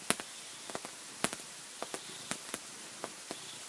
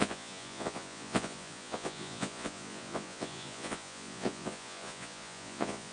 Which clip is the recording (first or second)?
first